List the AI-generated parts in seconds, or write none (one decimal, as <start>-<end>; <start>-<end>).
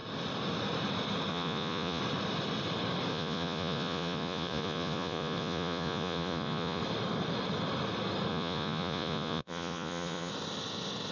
1.3-2.0; 3.1-6.8; 8.3-10.3